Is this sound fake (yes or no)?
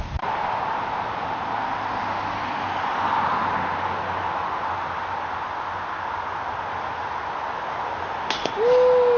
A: no